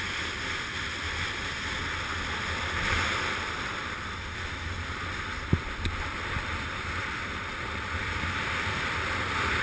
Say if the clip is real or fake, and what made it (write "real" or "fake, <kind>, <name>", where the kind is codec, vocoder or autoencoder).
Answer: fake, vocoder, BigVGAN v2